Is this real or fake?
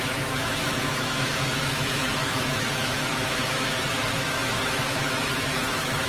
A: fake